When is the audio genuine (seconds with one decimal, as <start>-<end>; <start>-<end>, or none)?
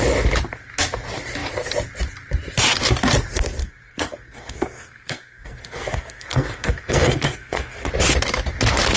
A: 0.0-3.6; 7.9-9.0